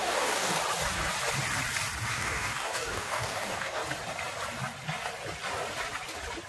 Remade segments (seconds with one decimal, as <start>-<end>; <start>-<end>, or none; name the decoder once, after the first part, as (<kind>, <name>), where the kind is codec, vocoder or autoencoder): 0.0-0.6 (codec, DAC); 2.1-3.8